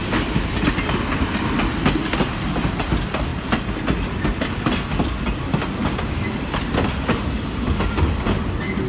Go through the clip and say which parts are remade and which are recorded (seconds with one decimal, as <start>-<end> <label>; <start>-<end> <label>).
0.0-1.7 remade; 1.7-5.8 recorded; 5.8-6.7 remade; 6.7-8.9 recorded